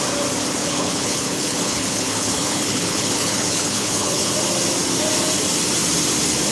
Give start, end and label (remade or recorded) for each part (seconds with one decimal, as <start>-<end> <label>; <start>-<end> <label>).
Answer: 0.0-0.6 recorded; 0.6-4.3 remade; 4.3-6.5 recorded